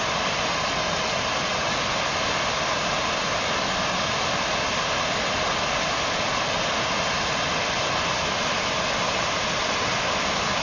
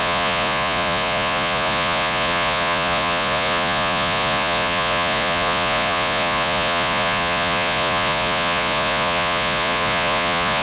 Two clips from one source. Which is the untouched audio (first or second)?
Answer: first